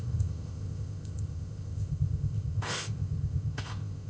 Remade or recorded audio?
remade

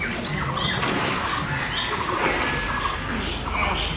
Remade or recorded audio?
recorded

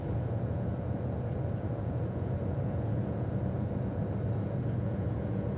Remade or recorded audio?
remade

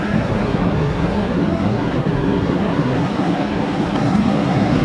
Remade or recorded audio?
remade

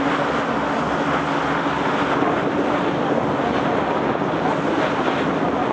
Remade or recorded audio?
recorded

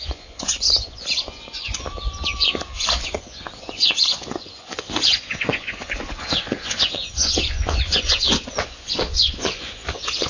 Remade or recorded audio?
remade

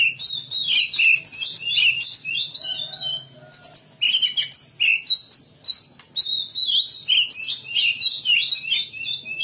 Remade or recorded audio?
recorded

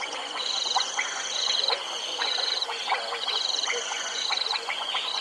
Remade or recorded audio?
remade